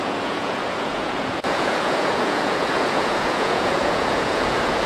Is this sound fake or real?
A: fake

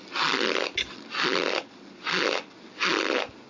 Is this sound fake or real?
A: real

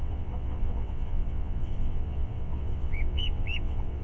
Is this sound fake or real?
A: fake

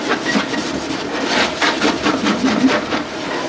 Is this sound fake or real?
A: fake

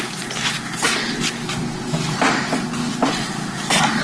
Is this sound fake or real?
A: real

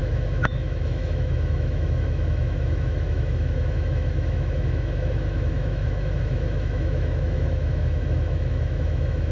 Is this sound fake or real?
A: fake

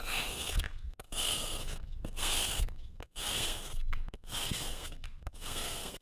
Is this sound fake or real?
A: fake